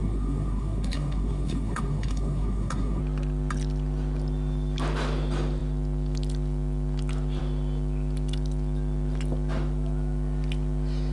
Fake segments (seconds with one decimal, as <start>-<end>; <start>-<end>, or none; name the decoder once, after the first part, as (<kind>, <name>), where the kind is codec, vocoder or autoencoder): 0.0-3.0 (codec, SNAC)